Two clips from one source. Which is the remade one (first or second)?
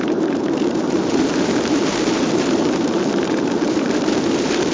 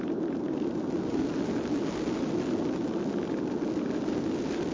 first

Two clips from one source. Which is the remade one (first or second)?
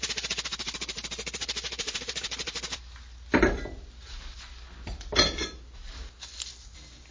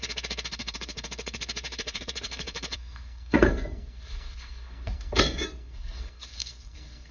second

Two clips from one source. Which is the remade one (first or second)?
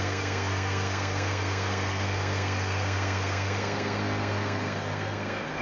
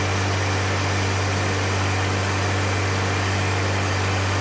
first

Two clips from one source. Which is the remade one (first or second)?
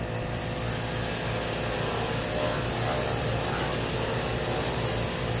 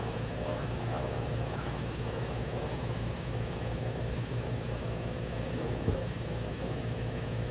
second